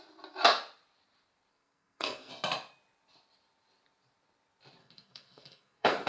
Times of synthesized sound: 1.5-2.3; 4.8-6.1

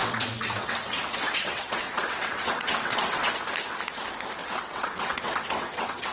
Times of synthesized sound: 0.0-3.3; 4.4-6.1

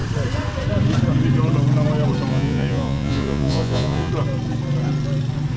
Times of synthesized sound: 2.3-4.1

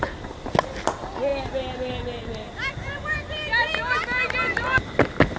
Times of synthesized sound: none